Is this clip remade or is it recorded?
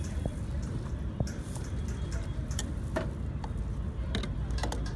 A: recorded